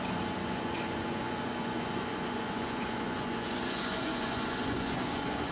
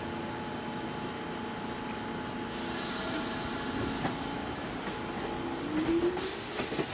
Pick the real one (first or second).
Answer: second